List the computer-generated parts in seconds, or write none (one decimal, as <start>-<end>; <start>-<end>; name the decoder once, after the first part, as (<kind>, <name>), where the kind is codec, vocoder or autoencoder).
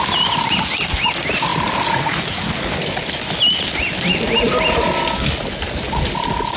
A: none